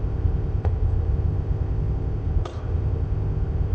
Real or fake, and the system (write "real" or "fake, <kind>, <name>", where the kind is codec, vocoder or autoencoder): fake, codec, ZipCodec